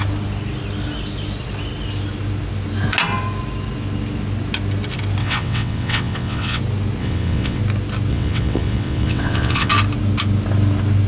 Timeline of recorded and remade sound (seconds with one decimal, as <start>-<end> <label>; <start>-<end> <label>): 0.0-5.2 recorded; 5.2-6.6 remade; 6.6-7.0 recorded; 7.0-7.6 remade; 7.6-8.1 recorded; 8.1-9.7 remade; 9.7-11.1 recorded